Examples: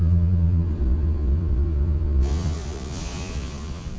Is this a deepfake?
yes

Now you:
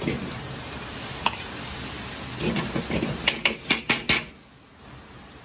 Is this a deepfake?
no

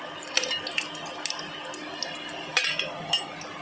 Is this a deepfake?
no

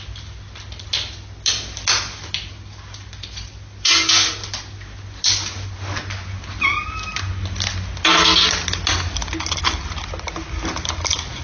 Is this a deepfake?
no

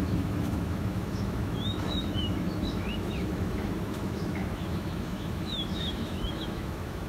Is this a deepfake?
yes